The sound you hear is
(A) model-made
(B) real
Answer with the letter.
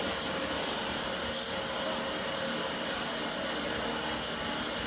B